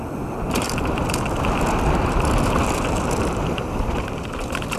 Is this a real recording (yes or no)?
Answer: yes